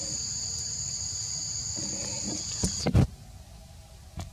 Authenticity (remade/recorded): recorded